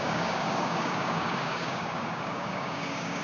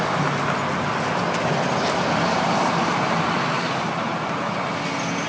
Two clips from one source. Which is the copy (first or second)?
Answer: first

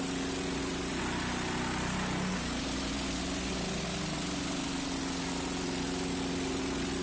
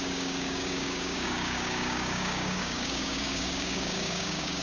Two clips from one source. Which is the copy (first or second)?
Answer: second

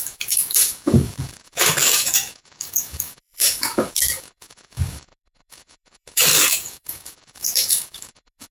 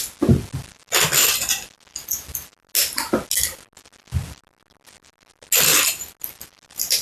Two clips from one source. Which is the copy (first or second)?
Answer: first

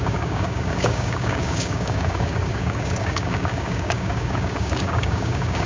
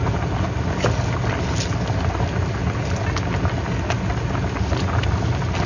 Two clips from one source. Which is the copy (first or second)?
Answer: first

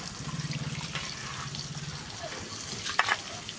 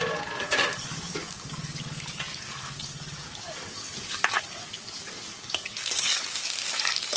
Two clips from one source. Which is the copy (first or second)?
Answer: second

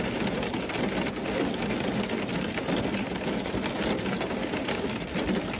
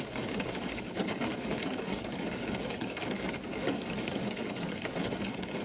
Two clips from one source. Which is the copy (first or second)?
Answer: second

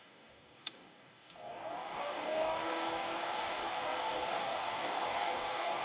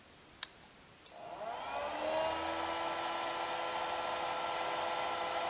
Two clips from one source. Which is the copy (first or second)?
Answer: first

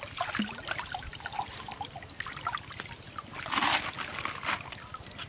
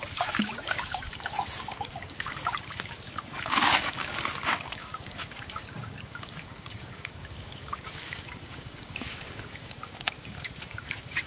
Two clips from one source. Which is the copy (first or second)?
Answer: second